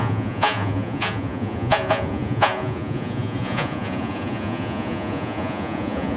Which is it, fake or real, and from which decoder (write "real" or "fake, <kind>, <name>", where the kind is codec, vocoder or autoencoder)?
fake, vocoder, Vocos